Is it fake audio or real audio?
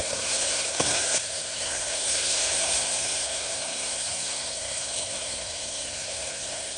fake